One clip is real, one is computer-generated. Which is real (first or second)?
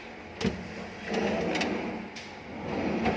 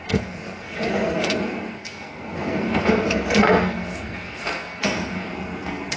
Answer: first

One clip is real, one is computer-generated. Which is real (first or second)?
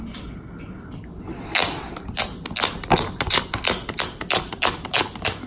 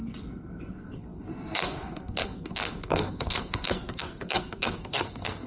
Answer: first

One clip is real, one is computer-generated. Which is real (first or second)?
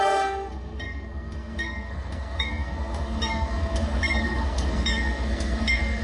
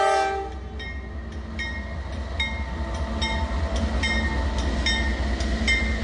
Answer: second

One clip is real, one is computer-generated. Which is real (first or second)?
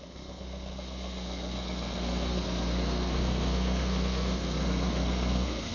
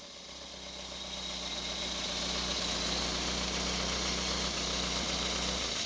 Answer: second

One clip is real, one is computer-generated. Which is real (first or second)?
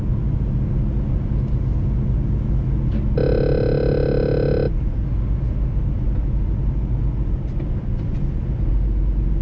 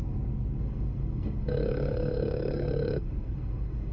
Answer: first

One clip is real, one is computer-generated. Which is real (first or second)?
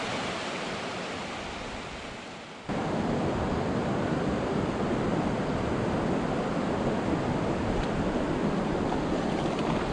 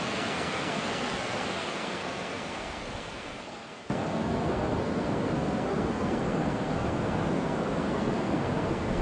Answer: first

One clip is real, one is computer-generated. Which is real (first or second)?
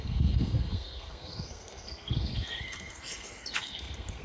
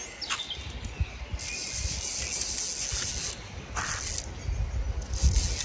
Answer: second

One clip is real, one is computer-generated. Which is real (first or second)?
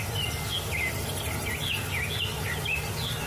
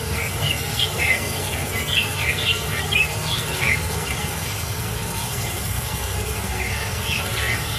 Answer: first